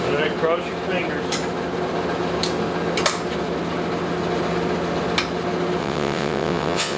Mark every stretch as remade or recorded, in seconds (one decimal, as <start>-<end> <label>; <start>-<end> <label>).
0.0-5.8 recorded; 5.8-7.0 remade